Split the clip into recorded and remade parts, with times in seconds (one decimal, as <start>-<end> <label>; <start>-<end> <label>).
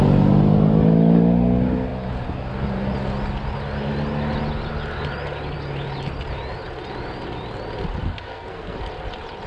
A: 0.0-8.1 recorded; 8.1-8.8 remade; 8.8-9.5 recorded